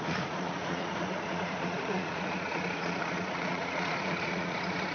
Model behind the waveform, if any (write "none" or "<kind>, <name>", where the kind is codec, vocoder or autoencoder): vocoder, Vocos